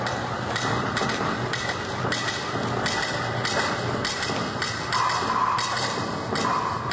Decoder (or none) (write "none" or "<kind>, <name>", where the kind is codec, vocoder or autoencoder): none